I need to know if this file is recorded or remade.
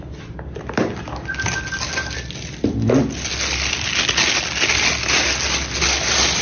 recorded